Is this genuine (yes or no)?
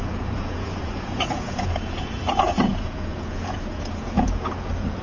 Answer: no